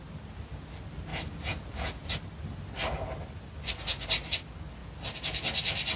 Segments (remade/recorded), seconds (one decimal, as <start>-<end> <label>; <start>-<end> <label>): 0.0-1.1 recorded; 1.1-2.1 remade; 2.1-6.0 recorded